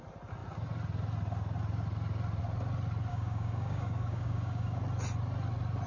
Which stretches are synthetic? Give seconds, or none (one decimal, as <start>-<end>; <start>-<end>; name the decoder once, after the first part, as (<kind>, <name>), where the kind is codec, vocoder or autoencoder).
3.1-4.8 (codec, DAC)